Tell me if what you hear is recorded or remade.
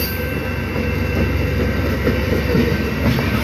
recorded